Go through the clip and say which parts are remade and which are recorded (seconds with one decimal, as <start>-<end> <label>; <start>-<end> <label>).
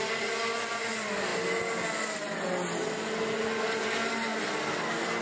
0.0-5.2 recorded